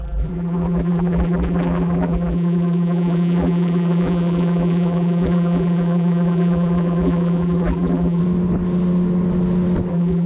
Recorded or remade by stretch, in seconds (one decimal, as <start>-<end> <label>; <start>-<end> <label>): 0.0-8.2 remade; 8.2-9.9 recorded; 9.9-10.3 remade